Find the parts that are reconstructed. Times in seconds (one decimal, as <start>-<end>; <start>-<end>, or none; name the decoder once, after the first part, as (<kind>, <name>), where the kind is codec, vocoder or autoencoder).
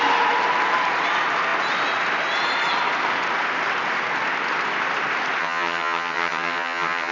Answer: 5.4-7.1 (vocoder, HiFi-GAN)